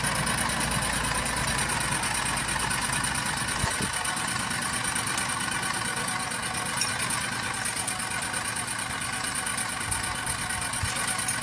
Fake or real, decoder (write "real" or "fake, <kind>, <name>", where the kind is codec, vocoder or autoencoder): real